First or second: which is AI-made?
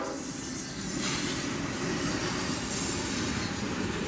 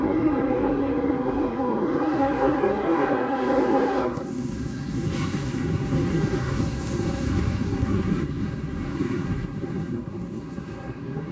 second